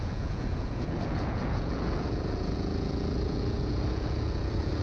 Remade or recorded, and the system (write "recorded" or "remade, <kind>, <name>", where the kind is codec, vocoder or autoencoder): remade, vocoder, Vocos